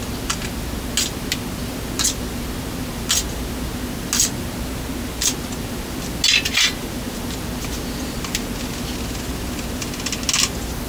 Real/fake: real